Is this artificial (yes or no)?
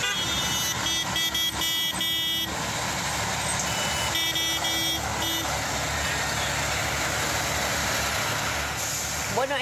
no